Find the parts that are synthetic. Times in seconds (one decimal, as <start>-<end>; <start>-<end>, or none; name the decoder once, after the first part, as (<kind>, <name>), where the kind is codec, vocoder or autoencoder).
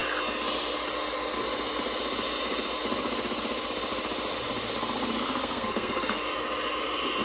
5.4-6.2 (codec, SNAC)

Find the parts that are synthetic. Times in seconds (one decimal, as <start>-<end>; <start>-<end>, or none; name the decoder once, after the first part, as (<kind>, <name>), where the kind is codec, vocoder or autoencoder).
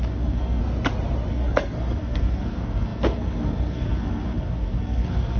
0.0-0.6 (codec, SNAC); 1.3-5.4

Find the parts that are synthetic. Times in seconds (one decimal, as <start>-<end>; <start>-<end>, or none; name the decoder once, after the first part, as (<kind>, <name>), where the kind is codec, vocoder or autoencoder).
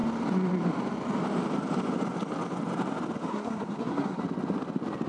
3.3-4.2 (codec, SNAC)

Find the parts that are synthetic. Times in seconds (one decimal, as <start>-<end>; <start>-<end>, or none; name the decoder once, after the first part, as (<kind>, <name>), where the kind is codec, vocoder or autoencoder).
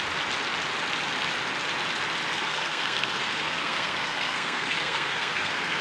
2.3-5.8 (codec, SNAC)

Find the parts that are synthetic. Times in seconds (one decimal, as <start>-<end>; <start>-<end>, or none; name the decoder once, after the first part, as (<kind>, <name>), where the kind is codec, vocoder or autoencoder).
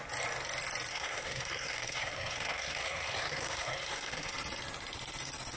0.9-4.3 (codec, SNAC)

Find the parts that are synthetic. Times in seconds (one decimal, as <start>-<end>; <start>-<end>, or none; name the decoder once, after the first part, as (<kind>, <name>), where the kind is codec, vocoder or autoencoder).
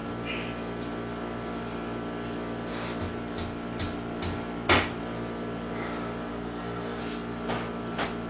6.3-7.0 (codec, SNAC)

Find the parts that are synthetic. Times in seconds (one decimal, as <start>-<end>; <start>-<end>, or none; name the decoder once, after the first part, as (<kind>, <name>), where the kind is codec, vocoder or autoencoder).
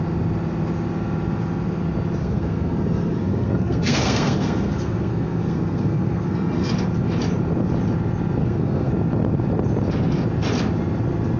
2.2-6.7 (codec, SNAC); 8.4-8.9